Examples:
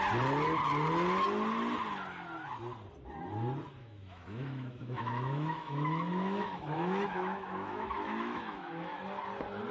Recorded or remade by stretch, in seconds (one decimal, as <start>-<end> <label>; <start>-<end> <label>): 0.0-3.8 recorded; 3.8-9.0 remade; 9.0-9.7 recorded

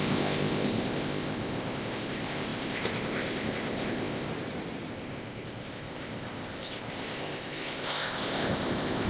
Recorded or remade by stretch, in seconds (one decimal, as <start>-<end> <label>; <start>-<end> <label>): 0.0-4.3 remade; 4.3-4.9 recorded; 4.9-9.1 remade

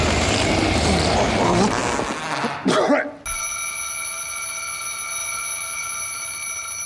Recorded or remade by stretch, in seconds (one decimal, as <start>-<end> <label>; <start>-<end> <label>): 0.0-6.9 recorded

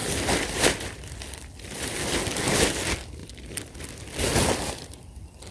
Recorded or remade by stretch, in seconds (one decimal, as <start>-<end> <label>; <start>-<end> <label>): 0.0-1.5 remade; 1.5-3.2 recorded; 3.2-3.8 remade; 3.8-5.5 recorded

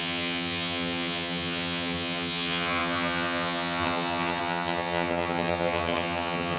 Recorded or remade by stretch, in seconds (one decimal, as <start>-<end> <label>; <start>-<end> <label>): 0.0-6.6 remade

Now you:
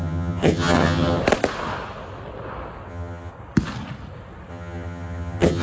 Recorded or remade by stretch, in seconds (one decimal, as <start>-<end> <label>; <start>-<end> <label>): 0.0-1.2 remade; 1.2-2.9 recorded; 2.9-3.3 remade; 3.3-4.5 recorded; 4.5-5.6 remade

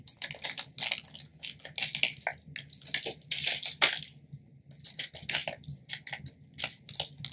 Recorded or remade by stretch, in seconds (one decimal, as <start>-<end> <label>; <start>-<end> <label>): 0.0-7.3 recorded

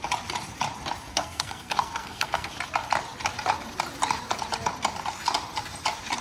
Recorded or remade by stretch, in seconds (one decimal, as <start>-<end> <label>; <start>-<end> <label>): 0.0-1.1 recorded; 1.1-2.5 remade; 2.5-6.2 recorded